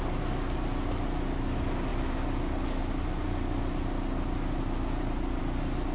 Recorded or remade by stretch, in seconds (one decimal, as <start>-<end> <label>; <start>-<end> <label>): 0.0-5.9 recorded